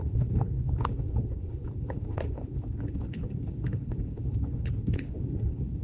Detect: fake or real fake